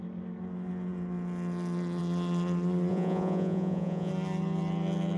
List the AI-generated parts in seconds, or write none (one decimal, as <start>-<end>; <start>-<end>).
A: 2.9-4.1